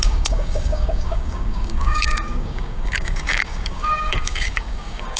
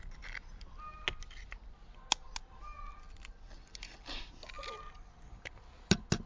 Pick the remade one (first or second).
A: first